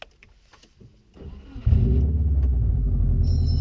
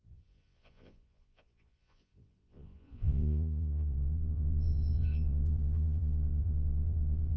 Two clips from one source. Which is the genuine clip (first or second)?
first